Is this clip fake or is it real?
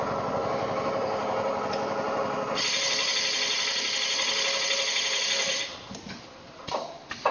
real